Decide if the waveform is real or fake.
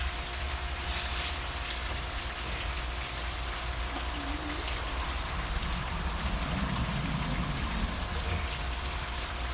real